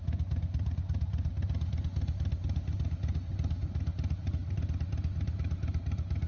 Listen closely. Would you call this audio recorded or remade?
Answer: recorded